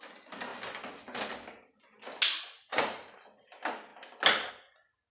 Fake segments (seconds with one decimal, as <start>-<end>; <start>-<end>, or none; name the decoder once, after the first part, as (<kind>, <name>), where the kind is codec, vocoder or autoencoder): 2.7-3.4 (vocoder, Vocos)